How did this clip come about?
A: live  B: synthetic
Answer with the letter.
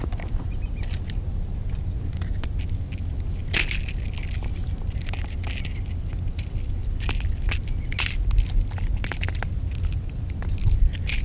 A